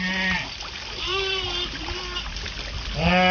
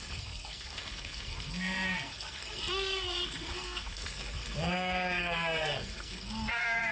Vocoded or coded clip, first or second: second